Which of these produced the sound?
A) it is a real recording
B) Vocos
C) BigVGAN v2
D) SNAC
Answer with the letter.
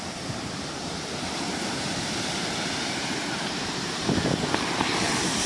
C